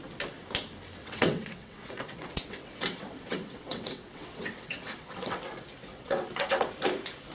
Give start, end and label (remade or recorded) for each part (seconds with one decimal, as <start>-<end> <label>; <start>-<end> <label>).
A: 0.0-1.0 recorded; 1.0-5.4 remade; 5.4-5.9 recorded; 5.9-6.7 remade; 6.7-7.3 recorded

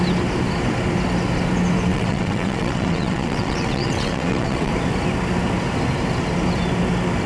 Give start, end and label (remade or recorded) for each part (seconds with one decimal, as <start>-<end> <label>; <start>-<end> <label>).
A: 0.0-1.9 recorded; 1.9-4.7 remade; 4.7-7.3 recorded

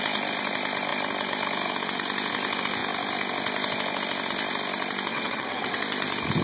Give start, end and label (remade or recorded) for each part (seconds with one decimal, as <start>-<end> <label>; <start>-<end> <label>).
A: 0.0-5.1 recorded; 5.1-5.8 remade; 5.8-6.4 recorded

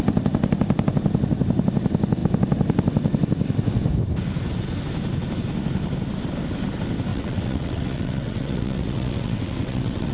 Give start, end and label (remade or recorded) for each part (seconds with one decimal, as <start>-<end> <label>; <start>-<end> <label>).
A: 0.0-7.1 recorded; 7.1-10.1 remade

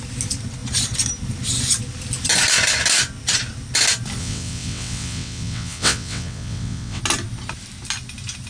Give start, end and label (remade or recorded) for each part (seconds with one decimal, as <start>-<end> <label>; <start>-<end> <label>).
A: 0.0-4.2 recorded; 4.2-7.0 remade; 7.0-8.5 recorded

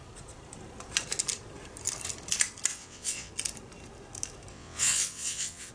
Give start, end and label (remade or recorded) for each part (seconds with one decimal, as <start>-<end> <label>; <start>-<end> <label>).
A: 0.0-2.7 recorded; 2.7-3.3 remade; 3.3-4.5 recorded; 4.5-5.7 remade

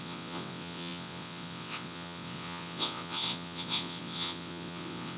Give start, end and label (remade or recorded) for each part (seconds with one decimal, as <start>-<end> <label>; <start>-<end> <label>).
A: 0.0-5.2 remade

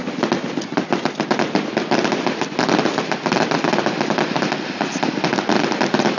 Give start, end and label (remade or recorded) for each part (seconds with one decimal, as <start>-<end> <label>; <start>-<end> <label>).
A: 0.0-6.2 recorded